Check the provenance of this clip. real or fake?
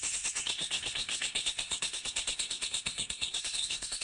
fake